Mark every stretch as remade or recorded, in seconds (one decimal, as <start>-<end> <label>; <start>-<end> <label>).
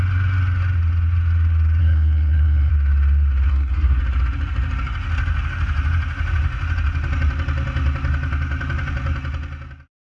0.0-1.8 recorded; 1.8-2.7 remade; 2.7-3.5 recorded; 3.5-4.0 remade; 4.0-10.0 recorded